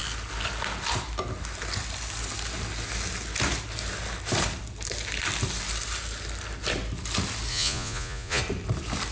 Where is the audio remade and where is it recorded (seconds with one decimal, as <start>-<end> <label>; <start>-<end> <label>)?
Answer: 0.0-7.5 recorded; 7.5-8.4 remade; 8.4-9.1 recorded